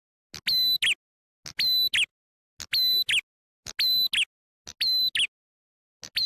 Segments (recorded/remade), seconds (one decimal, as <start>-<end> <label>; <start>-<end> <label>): 0.0-6.3 recorded

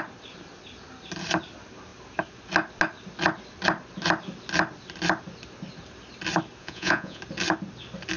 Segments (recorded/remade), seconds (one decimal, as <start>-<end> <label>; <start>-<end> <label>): 0.0-6.6 recorded; 6.6-7.2 remade; 7.2-8.2 recorded

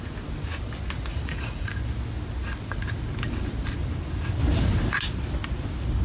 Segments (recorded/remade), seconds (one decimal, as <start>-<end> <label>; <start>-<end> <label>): 0.0-1.1 recorded; 1.1-1.7 remade; 1.7-6.0 recorded

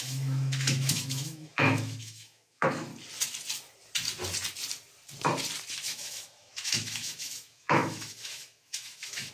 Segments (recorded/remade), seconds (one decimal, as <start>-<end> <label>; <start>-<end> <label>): 0.0-2.9 remade; 2.9-5.7 recorded; 5.7-9.3 remade